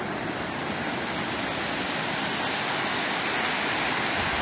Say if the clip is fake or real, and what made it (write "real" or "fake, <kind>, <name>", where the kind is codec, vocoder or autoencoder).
real